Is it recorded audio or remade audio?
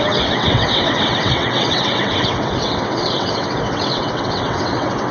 remade